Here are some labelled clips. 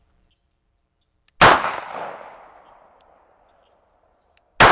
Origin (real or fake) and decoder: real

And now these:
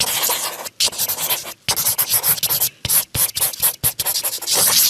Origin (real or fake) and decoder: real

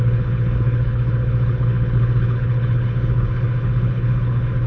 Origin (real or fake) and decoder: fake, codec, HILCodec